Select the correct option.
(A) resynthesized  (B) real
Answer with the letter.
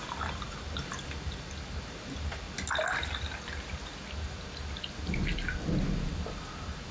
B